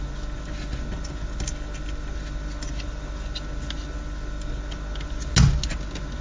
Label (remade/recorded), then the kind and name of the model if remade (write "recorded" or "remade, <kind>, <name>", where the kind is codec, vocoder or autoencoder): recorded